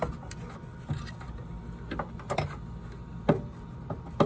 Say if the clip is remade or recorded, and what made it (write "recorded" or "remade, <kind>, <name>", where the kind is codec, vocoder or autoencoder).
recorded